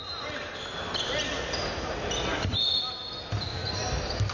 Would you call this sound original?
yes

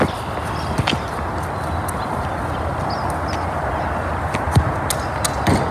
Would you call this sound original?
yes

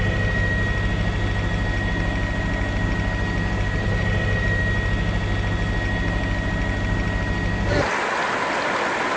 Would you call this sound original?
yes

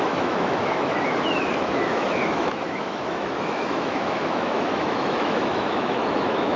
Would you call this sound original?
no